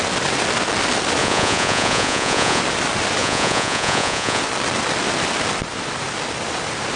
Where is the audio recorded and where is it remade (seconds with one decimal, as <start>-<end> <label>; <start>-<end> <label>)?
0.0-1.2 recorded; 1.2-2.6 remade; 2.6-3.2 recorded; 3.2-4.4 remade; 4.4-7.0 recorded